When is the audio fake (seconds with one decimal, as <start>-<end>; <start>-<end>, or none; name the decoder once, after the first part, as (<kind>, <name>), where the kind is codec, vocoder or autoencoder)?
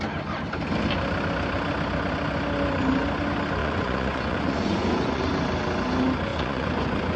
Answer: 3.6-5.2 (vocoder, Vocos); 6.3-7.2